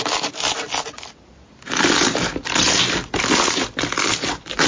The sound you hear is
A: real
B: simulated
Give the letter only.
A